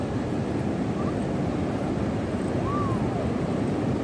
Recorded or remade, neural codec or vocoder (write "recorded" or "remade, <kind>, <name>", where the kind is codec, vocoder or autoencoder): recorded